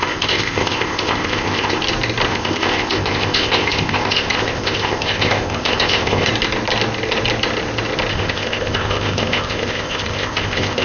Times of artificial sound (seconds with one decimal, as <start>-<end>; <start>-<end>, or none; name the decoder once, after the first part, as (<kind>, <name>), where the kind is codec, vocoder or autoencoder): 0.0-1.8 (codec, ZipCodec); 2.3-6.3; 8.1-10.8